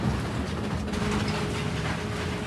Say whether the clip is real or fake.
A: real